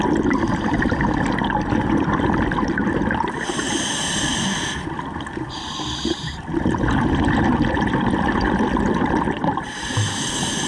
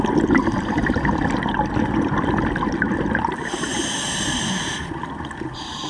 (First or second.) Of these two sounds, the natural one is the second